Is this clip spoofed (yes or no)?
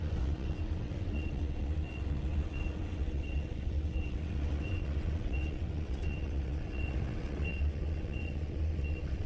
yes